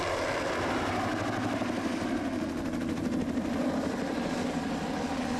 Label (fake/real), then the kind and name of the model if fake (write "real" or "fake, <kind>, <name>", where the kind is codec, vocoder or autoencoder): real